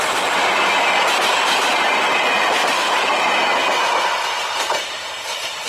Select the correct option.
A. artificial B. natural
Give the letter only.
B